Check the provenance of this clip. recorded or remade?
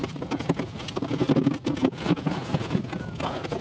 recorded